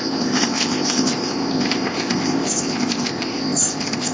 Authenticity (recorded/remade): remade